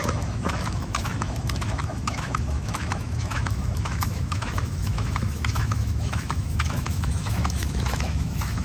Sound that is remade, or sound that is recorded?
remade